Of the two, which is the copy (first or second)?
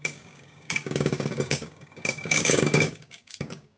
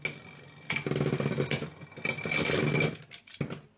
first